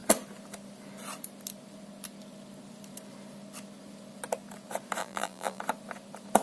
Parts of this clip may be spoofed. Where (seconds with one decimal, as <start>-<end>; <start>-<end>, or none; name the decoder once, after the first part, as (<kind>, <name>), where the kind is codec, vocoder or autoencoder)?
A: 5.0-5.6 (vocoder, BigVGAN v2)